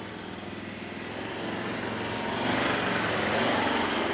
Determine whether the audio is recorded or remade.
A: recorded